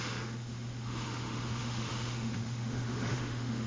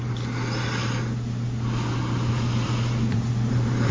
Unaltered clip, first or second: second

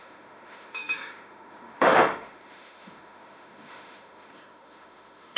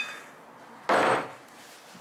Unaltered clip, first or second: second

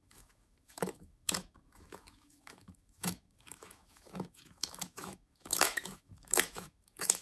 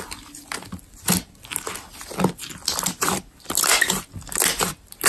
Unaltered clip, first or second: second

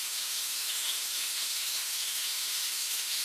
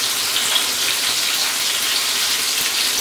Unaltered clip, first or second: second